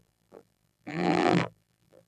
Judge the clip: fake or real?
fake